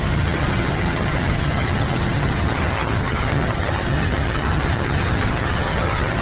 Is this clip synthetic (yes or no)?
yes